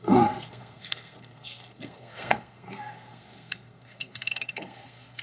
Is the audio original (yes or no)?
no